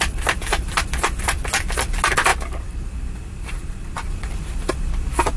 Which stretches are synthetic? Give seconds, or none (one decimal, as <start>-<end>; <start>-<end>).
none